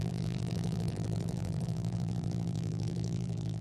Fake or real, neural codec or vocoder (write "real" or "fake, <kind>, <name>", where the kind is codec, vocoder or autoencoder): fake, vocoder, BigVGAN v2